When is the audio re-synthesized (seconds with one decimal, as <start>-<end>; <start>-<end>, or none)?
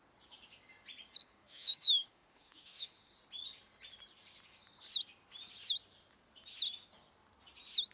1.2-3.1